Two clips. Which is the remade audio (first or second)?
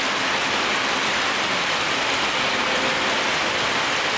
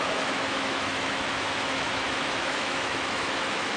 second